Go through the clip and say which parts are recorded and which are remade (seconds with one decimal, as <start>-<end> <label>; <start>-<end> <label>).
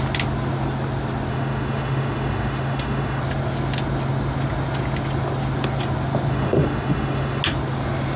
0.0-1.3 recorded; 1.3-3.2 remade; 3.2-6.3 recorded; 6.3-7.4 remade; 7.4-8.2 recorded